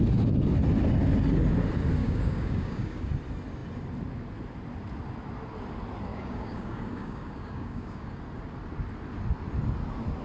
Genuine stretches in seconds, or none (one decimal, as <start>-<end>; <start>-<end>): 0.0-2.0; 3.1-6.1; 8.2-10.2